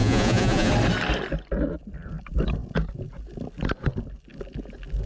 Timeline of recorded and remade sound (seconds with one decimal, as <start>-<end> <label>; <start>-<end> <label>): 0.0-0.7 remade; 0.7-5.1 recorded